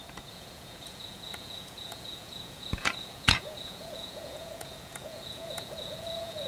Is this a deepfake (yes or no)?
yes